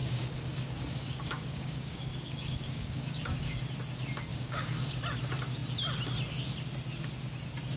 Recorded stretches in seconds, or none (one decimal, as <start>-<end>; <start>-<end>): 3.6-4.3; 4.9-7.8